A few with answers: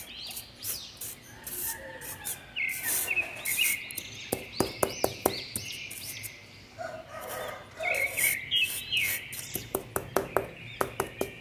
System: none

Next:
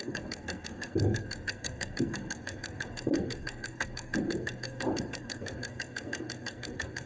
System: codec, SNAC